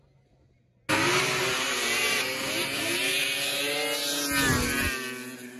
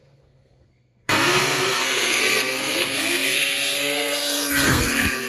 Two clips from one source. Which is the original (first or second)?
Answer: first